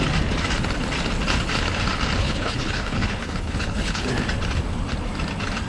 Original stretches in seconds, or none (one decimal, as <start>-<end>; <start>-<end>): 0.0-2.2; 4.1-5.7